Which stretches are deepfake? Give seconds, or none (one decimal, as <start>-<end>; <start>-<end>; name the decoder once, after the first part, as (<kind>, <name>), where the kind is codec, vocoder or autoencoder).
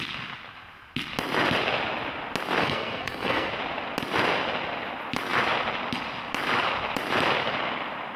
2.6-3.5 (codec, SNAC)